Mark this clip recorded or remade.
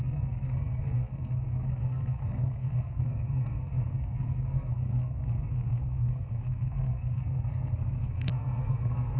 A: remade